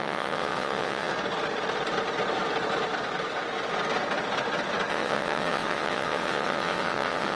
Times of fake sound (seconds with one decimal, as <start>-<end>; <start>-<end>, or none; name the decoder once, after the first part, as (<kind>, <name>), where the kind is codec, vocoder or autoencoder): 0.0-1.1 (vocoder, WaveNeXt); 4.9-7.4

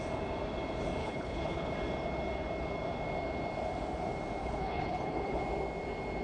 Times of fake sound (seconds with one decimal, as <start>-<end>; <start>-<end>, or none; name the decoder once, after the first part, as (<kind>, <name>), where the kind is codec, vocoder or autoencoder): 1.0-1.7 (codec, HILCodec); 4.4-5.4

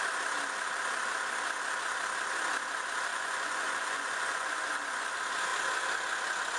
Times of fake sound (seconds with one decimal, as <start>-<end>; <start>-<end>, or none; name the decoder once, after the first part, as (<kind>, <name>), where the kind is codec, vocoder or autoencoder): 3.1-5.1 (vocoder, Vocos)